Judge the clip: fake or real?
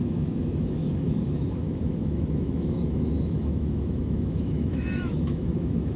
fake